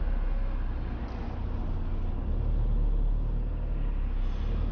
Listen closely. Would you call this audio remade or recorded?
recorded